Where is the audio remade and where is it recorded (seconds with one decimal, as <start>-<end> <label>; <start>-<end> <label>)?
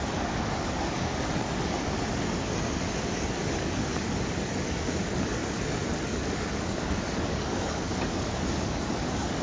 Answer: 0.0-5.4 remade; 5.4-6.0 recorded; 6.0-9.4 remade